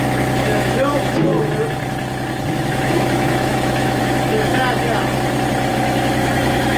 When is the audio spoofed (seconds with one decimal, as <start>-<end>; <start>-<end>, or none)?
0.0-1.3; 2.5-4.5; 5.7-6.8